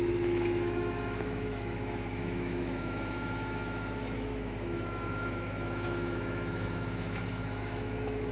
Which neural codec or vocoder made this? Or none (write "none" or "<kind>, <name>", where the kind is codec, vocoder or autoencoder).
autoencoder, DAC-VAE